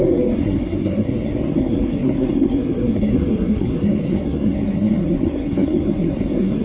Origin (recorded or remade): remade